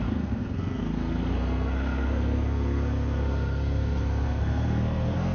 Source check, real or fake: fake